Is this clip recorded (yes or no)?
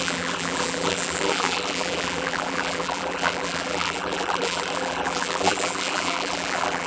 no